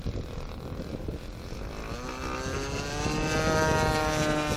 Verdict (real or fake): real